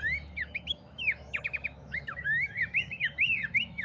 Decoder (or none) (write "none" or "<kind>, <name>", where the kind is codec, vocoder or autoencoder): autoencoder, DAC-VAE